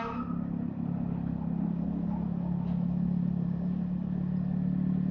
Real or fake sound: real